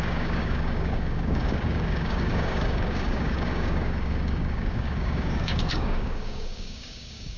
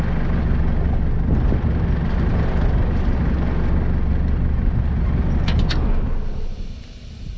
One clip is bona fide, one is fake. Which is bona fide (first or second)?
second